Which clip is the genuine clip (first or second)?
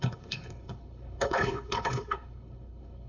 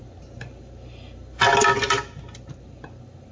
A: second